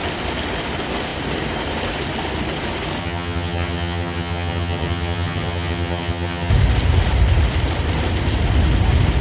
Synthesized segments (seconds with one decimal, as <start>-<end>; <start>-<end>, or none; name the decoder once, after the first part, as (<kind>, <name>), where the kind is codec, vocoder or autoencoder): 3.0-6.5 (vocoder, HiFi-GAN)